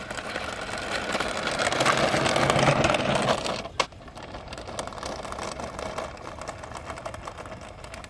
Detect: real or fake real